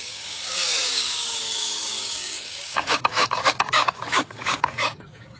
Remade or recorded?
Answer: remade